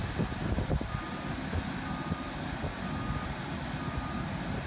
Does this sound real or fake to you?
real